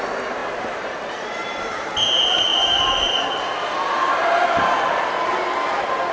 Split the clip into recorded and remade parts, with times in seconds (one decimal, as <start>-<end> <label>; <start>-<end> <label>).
0.0-2.5 recorded; 2.5-3.1 remade; 3.1-4.0 recorded; 4.0-5.0 remade; 5.0-6.1 recorded

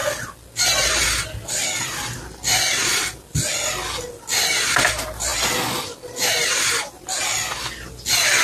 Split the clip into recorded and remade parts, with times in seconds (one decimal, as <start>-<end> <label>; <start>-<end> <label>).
0.0-5.3 recorded; 5.3-6.1 remade; 6.1-8.4 recorded

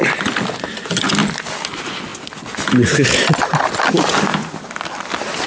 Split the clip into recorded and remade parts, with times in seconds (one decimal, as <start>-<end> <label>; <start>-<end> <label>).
0.0-1.2 recorded; 1.2-1.7 remade; 1.7-5.5 recorded

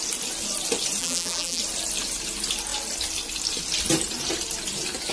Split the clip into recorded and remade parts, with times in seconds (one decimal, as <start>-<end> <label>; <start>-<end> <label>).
0.0-1.0 recorded; 1.0-1.6 remade; 1.6-5.1 recorded